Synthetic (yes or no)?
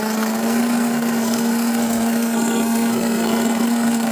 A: yes